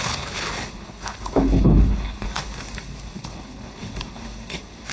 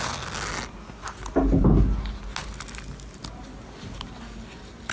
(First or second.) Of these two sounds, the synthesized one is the first